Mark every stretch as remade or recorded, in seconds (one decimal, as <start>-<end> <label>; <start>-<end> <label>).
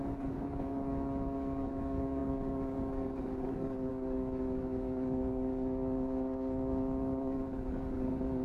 0.0-8.4 remade